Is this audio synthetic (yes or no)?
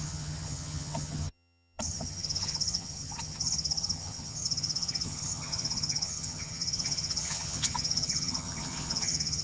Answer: yes